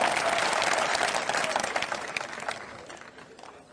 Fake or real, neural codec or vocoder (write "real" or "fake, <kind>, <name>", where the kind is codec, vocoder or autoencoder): real